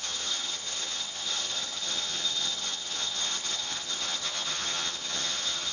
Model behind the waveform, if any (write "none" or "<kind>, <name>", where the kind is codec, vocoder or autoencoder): vocoder, HiFi-GAN